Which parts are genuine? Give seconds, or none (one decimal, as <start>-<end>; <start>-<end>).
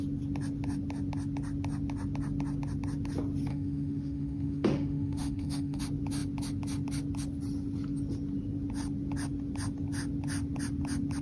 0.0-3.5; 5.8-11.2